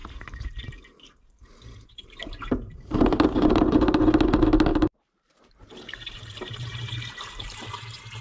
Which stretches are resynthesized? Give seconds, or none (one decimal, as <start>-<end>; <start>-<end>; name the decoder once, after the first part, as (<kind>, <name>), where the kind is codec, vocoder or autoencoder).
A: 0.0-3.6 (vocoder, BigVGAN v2); 4.7-7.7